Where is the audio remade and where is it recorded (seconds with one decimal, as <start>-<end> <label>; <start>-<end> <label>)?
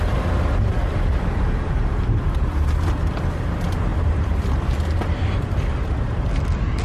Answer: 0.0-0.8 recorded; 0.8-2.2 remade; 2.2-3.9 recorded; 3.9-4.4 remade; 4.4-6.8 recorded